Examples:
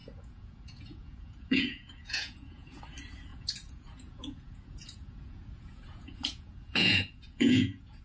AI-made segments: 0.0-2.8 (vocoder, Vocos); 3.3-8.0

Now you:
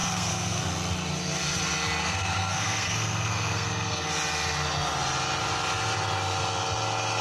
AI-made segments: 0.0-0.6 (codec, SNAC); 2.0-4.1

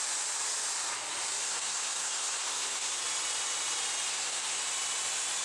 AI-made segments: 1.4-3.0 (codec, SNAC); 4.1-4.6

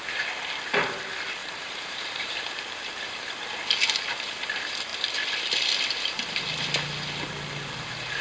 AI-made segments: 1.4-2.4 (vocoder, BigVGAN v2)

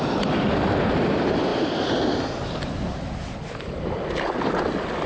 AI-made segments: none

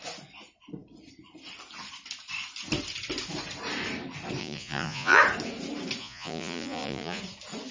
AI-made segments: 4.4-5.2 (vocoder, Vocos); 6.0-7.2

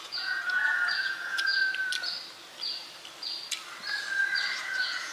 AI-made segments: 0.0-1.5 (vocoder, Vocos); 4.6-5.1